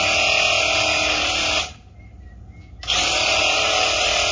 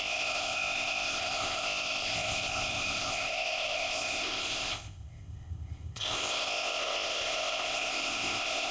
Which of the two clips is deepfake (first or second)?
second